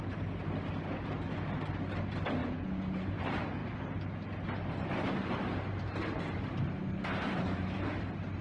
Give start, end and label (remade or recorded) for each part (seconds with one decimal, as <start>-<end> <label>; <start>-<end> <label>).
0.0-2.4 recorded; 2.4-3.2 remade; 3.2-8.4 recorded